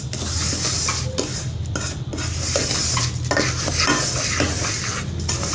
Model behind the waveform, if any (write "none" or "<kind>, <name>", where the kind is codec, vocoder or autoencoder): none